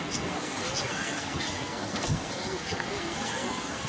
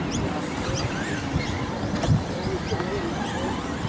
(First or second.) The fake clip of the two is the first